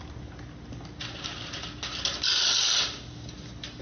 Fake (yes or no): no